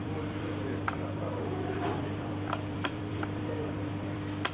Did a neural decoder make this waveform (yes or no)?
yes